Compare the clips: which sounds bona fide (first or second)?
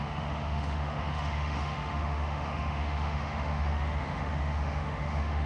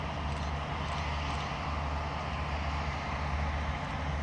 second